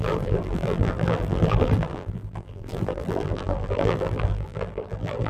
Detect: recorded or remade remade